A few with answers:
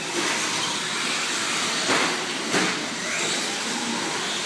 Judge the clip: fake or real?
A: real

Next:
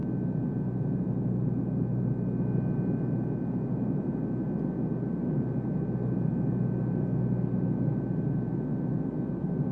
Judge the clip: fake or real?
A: real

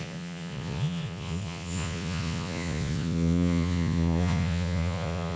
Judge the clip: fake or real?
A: fake